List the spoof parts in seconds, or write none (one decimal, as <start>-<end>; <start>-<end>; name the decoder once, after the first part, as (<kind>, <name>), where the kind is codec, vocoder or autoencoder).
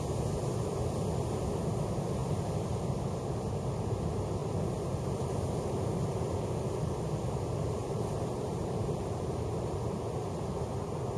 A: 2.2-3.0 (vocoder, BigVGAN v2); 7.8-9.8